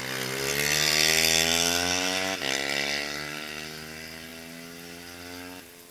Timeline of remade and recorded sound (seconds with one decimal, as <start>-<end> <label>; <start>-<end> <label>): 0.0-0.5 recorded; 0.5-1.1 remade; 1.1-5.9 recorded